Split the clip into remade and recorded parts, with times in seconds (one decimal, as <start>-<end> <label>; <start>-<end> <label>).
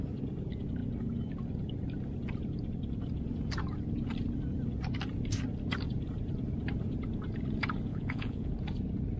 0.0-7.9 recorded; 7.9-8.5 remade; 8.5-9.2 recorded